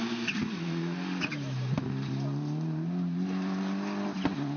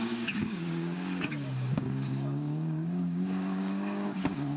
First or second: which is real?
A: first